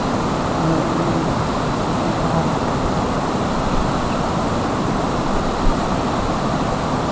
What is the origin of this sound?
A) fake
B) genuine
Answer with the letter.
A